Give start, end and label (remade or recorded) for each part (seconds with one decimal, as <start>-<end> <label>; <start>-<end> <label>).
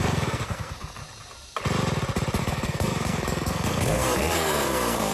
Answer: 0.0-1.0 remade; 1.0-2.4 recorded; 2.4-5.1 remade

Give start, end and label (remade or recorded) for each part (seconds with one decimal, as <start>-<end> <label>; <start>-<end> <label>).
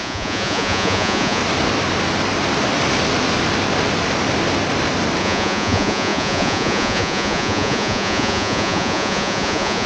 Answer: 0.0-1.4 remade; 1.4-5.2 recorded; 5.2-9.9 remade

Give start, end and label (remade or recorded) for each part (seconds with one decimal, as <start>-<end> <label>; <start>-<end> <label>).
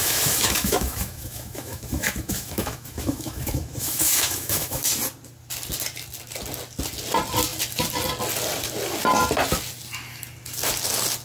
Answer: 0.0-4.9 remade; 4.9-11.2 recorded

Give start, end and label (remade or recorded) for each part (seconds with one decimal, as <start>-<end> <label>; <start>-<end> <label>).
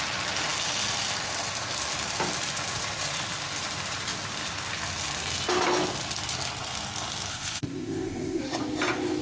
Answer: 0.0-7.3 recorded; 7.3-8.4 remade; 8.4-9.2 recorded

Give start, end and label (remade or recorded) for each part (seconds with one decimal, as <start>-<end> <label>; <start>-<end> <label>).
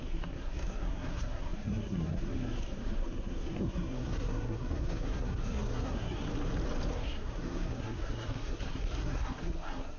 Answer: 0.0-6.2 remade; 6.2-6.9 recorded; 6.9-10.0 remade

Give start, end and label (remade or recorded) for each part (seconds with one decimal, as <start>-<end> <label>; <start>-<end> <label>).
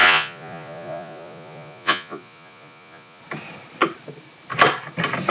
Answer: 0.0-3.2 remade; 3.2-5.3 recorded